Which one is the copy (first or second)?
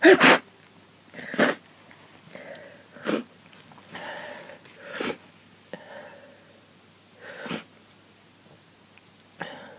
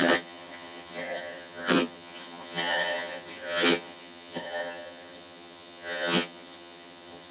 second